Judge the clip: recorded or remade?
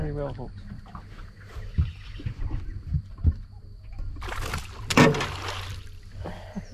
recorded